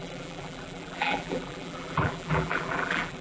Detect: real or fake fake